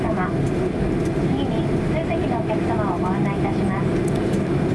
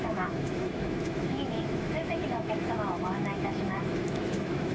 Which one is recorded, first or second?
first